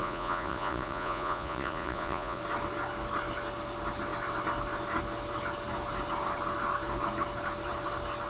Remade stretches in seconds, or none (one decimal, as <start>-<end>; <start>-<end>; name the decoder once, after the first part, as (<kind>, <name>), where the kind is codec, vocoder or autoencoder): 0.0-2.4 (vocoder, Vocos)